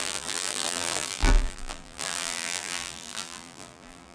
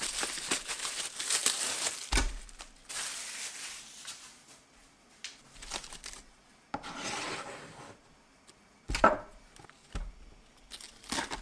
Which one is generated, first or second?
first